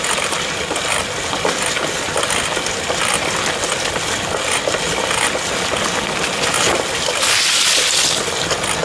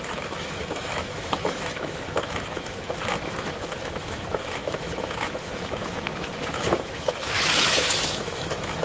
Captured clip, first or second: first